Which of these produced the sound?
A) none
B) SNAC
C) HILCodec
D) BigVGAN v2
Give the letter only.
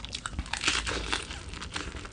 A